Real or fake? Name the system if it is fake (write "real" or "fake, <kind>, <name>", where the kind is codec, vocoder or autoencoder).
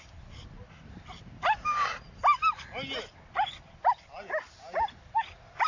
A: real